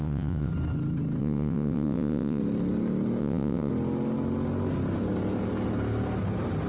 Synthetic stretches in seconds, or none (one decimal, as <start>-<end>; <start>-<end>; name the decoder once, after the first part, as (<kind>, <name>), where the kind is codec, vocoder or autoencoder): 0.0-0.5 (vocoder, WaveNeXt); 1.2-2.4; 3.2-3.7

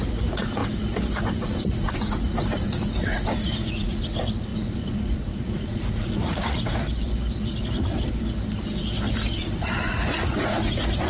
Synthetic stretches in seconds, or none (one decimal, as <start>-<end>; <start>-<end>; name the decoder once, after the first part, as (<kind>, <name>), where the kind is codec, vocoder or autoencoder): 0.0-0.6 (vocoder, Vocos); 1.2-6.7; 9.4-11.1

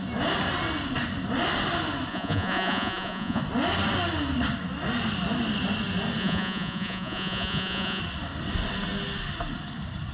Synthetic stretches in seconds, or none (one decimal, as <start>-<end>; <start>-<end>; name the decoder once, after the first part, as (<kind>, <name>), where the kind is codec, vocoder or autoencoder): 2.1-3.4 (vocoder, Vocos); 6.2-8.0

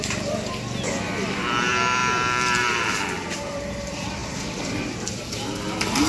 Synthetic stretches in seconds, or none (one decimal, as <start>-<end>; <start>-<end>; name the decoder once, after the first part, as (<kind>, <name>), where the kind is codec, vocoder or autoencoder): 0.0-6.1 (vocoder, BigVGAN v2)

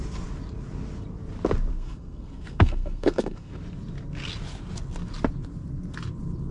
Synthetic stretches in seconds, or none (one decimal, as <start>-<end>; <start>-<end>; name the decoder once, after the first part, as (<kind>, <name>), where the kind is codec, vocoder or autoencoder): 1.7-3.5 (codec, SNAC)

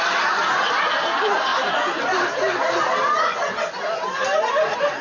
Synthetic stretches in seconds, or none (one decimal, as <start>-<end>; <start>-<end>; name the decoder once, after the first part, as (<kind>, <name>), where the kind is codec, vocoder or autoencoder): none